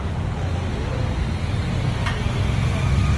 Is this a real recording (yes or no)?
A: yes